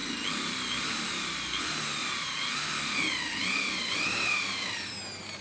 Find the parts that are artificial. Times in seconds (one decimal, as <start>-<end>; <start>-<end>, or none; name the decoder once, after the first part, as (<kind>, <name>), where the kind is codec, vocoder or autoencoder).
0.0-1.6 (vocoder, BigVGAN v2)